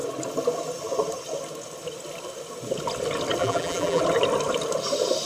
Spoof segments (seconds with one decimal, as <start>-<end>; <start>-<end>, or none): 3.4-4.0